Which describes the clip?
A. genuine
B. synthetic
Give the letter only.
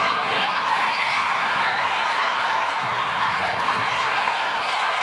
B